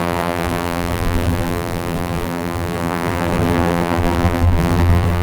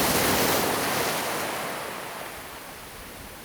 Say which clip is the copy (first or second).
first